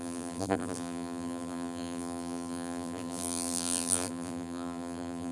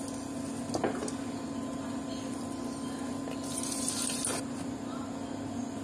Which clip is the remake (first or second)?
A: first